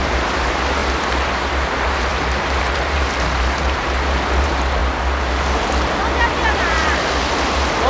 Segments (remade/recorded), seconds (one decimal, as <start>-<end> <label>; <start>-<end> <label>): 0.0-0.8 remade; 0.8-1.5 recorded; 1.5-4.8 remade; 4.8-6.3 recorded; 6.3-7.9 remade